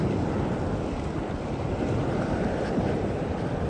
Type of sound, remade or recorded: recorded